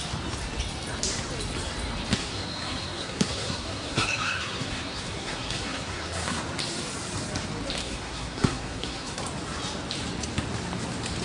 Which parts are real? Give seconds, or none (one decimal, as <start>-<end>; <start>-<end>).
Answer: 0.0-2.2; 6.4-7.8; 9.2-11.2